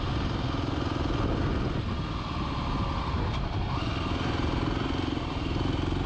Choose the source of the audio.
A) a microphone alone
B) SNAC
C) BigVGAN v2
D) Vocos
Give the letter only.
A